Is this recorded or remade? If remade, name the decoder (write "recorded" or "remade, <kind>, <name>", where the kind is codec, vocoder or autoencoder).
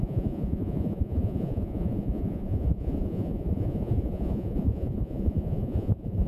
remade, vocoder, Vocos